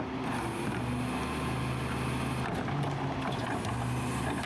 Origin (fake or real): real